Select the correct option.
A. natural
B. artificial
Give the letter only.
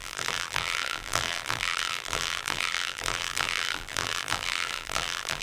B